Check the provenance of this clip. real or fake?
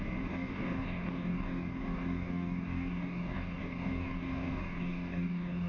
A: fake